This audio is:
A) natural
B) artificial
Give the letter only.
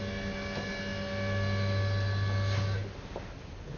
A